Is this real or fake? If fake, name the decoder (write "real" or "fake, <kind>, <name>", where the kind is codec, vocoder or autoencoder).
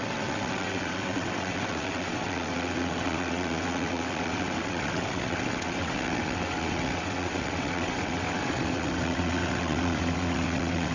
fake, vocoder, WaveNeXt